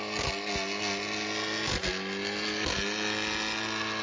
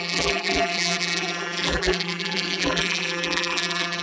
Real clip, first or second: first